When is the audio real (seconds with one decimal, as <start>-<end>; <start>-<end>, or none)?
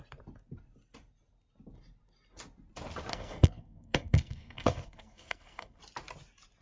0.0-3.1; 5.8-6.6